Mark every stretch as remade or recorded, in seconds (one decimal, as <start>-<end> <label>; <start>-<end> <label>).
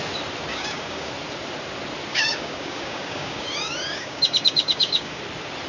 0.0-0.5 recorded; 0.5-1.1 remade; 1.1-2.1 recorded; 2.1-5.2 remade; 5.2-5.7 recorded